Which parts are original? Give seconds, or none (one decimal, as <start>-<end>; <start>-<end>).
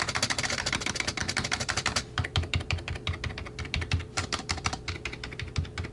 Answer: 0.0-1.2; 4.7-5.9